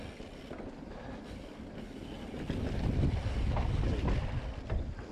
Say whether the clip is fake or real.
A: real